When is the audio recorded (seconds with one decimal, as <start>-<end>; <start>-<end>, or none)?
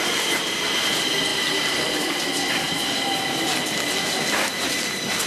0.0-5.3